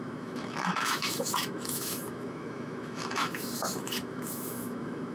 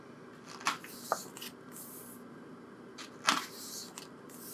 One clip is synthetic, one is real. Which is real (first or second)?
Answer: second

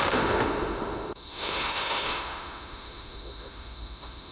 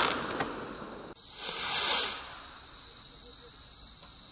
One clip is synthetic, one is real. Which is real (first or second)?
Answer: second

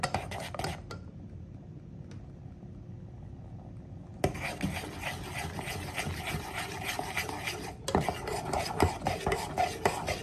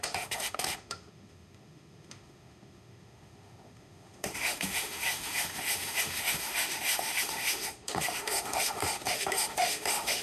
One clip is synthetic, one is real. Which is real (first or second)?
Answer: first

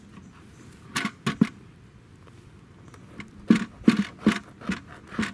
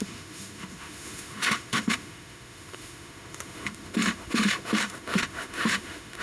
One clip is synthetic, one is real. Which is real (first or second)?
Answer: first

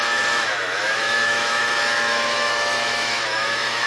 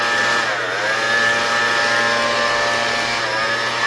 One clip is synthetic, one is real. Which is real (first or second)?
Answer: second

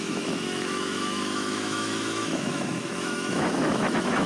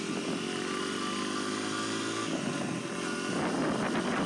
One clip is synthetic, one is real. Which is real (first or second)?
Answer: second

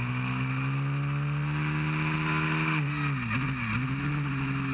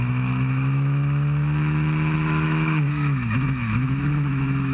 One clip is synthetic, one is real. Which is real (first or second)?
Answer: first